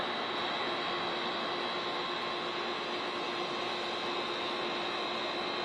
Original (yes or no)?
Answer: yes